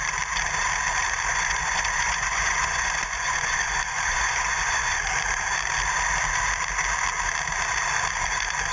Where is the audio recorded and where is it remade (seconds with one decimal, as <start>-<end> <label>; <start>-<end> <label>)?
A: 0.0-1.3 recorded; 1.3-5.0 remade; 5.0-8.7 recorded